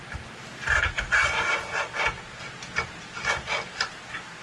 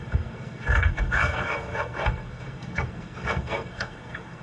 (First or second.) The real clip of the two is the first